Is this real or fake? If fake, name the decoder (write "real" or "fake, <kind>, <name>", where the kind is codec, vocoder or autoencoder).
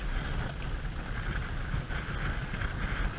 real